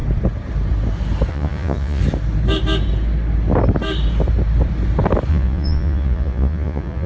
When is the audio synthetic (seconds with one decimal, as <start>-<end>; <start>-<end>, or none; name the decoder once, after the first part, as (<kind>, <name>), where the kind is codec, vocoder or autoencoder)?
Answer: 1.3-2.0 (vocoder, Vocos); 5.3-7.1